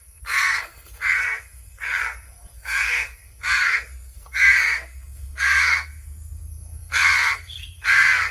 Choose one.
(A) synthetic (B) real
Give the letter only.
A